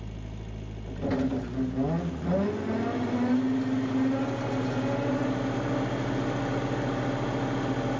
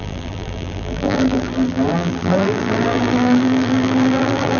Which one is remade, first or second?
second